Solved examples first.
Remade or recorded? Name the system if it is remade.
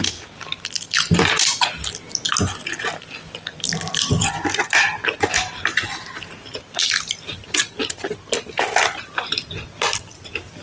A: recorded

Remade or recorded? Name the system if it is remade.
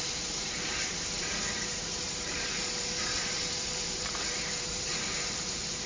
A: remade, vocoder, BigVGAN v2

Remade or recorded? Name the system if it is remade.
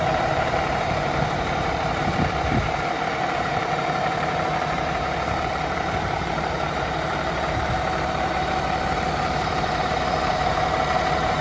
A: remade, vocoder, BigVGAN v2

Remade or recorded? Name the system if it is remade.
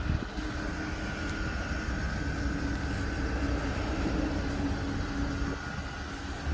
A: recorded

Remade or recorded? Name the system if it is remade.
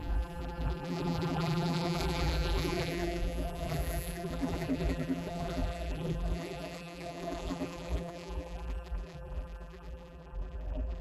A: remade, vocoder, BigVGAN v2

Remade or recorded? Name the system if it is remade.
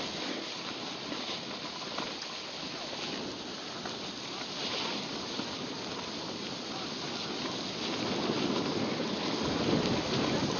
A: recorded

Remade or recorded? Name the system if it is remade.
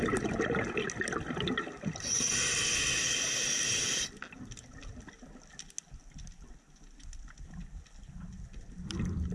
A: recorded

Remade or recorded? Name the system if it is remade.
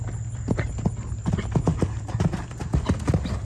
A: recorded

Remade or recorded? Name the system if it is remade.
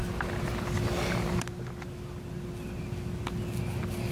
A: recorded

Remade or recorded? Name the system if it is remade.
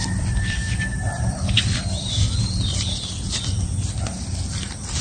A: remade, vocoder, BigVGAN v2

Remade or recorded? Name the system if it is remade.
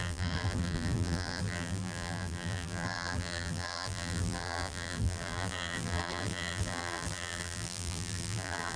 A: remade, vocoder, BigVGAN v2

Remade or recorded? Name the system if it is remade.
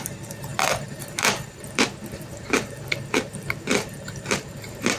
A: remade, vocoder, BigVGAN v2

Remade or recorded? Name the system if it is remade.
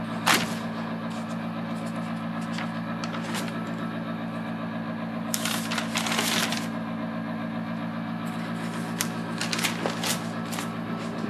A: recorded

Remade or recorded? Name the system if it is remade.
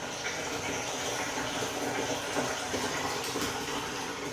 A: remade, vocoder, BigVGAN v2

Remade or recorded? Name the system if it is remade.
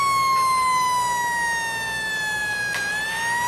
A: recorded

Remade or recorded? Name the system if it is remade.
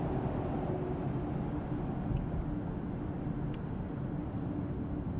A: recorded